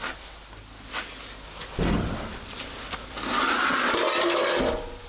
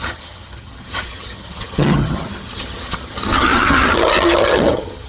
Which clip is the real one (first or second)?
first